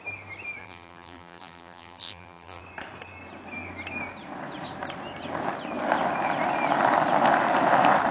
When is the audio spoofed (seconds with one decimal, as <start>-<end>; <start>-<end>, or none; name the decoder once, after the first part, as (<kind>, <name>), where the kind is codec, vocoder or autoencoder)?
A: 0.6-2.6 (vocoder, BigVGAN v2)